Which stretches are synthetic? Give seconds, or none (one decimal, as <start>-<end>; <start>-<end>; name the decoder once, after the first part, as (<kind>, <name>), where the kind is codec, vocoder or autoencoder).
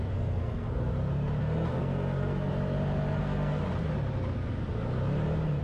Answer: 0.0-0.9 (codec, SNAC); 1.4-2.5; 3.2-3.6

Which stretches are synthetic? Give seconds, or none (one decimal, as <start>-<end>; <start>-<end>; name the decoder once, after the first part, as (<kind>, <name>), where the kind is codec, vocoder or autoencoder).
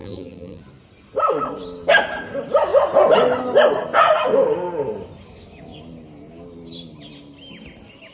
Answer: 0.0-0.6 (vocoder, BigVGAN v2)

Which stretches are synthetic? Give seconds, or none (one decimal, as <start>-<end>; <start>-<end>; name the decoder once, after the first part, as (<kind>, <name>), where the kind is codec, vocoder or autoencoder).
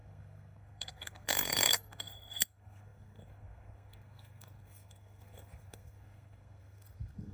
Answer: 0.0-7.3 (codec, SNAC)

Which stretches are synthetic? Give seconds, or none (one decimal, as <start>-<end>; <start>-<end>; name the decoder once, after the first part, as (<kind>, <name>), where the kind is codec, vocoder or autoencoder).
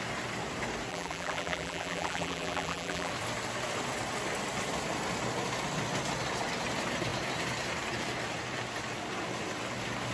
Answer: 0.9-3.1 (vocoder, BigVGAN v2)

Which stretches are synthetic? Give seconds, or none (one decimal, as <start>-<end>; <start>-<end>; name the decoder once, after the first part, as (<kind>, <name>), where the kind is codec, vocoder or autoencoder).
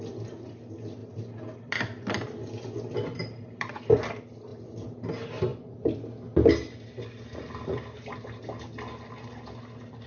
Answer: 1.0-3.7 (vocoder, BigVGAN v2); 4.5-5.1; 5.5-6.0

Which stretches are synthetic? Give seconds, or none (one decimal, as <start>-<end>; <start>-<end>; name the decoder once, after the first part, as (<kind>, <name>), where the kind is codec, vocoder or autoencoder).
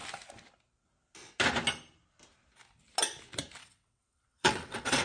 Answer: 3.6-5.0 (vocoder, WaveNeXt)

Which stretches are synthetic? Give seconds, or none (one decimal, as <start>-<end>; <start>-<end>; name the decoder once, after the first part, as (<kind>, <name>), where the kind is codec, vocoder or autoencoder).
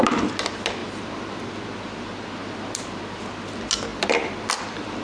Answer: 0.8-1.4 (vocoder, BigVGAN v2); 3.9-4.6